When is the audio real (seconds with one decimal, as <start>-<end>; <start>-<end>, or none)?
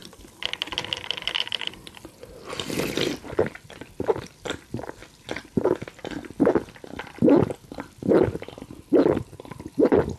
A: 0.0-1.4; 5.0-7.8